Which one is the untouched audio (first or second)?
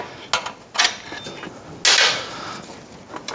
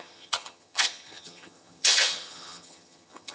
first